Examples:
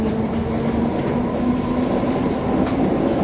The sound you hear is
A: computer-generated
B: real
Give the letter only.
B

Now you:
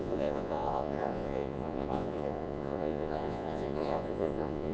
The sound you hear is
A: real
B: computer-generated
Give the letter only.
B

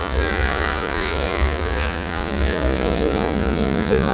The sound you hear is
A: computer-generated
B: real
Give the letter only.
A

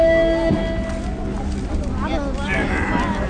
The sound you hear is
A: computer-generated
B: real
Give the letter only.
B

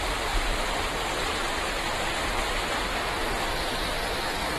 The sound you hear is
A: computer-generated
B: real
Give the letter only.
B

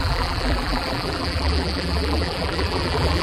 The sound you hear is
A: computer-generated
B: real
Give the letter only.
A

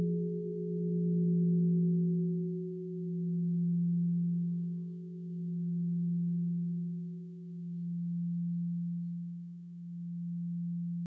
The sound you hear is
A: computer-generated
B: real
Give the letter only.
A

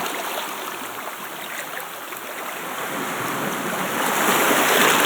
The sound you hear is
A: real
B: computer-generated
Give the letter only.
A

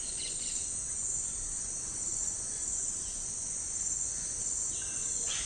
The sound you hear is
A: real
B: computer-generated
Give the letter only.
B